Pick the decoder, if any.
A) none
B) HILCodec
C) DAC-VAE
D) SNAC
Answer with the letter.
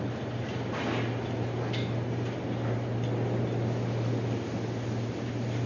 A